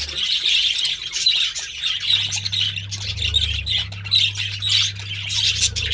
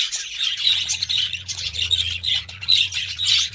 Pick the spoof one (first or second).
second